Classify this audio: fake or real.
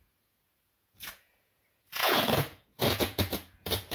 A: fake